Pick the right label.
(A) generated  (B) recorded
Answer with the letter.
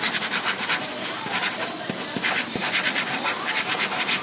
A